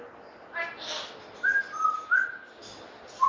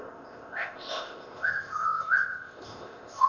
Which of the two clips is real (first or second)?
first